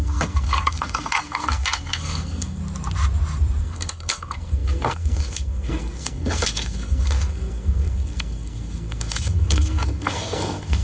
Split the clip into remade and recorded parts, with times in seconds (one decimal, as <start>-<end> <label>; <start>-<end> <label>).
0.0-2.6 remade; 2.6-3.6 recorded; 3.6-10.8 remade